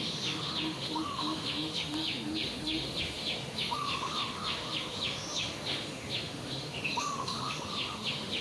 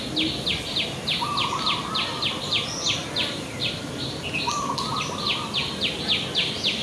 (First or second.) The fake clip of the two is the first